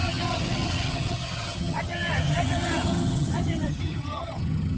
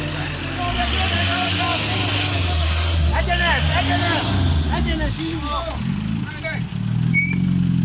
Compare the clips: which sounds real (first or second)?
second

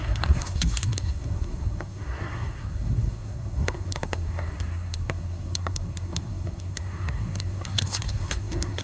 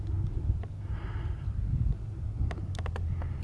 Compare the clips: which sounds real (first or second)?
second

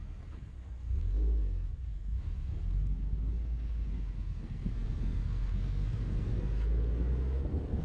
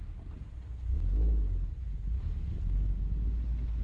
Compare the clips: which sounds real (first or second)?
second